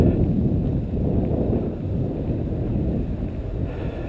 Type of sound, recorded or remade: recorded